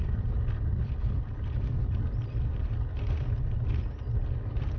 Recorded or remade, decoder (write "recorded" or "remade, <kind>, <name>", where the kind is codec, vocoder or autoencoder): recorded